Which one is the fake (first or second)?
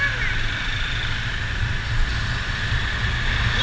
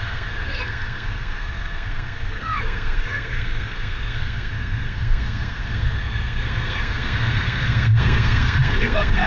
second